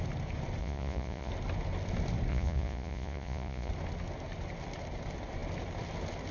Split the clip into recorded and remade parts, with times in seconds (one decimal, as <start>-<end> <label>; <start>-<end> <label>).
0.0-0.6 recorded; 0.6-1.3 remade; 1.3-2.3 recorded; 2.3-3.7 remade; 3.7-6.3 recorded